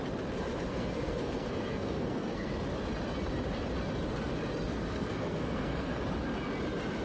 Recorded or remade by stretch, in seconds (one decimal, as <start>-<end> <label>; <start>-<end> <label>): 0.0-0.7 recorded; 0.7-2.5 remade; 2.5-4.7 recorded; 4.7-6.0 remade; 6.0-7.0 recorded